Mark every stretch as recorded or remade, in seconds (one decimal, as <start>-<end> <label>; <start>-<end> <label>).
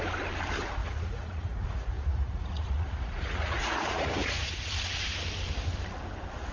0.0-0.8 recorded; 0.8-4.7 remade; 4.7-6.5 recorded